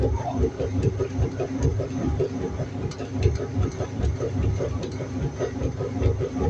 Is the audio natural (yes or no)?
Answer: no